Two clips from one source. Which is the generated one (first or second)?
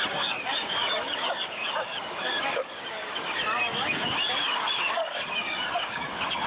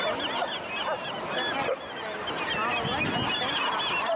first